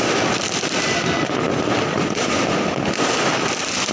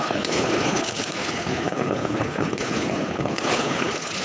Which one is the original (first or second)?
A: first